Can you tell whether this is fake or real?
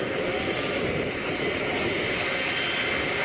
real